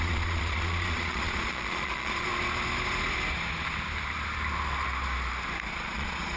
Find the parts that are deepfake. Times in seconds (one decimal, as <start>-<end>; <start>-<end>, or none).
0.0-2.3; 5.7-6.4